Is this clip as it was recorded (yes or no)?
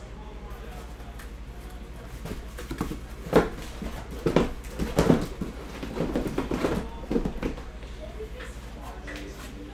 yes